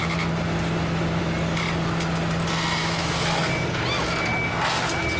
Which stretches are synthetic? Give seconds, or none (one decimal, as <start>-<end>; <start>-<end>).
2.8-3.5